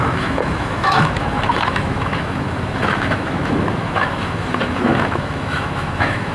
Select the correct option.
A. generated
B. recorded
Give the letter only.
A